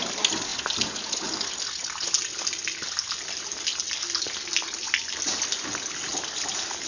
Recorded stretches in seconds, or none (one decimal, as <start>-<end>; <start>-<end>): 0.0-6.9